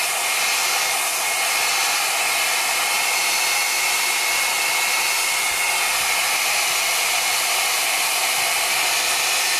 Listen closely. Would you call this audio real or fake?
real